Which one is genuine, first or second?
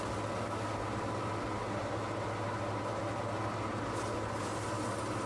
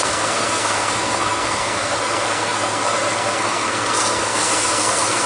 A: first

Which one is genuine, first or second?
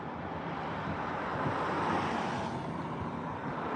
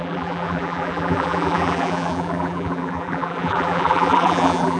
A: first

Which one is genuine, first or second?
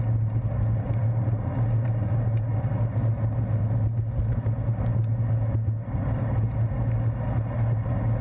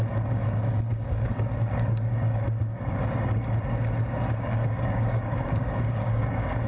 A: first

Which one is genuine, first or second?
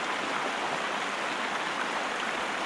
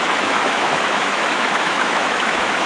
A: first